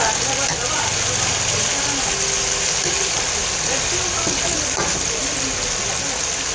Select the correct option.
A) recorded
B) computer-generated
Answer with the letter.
A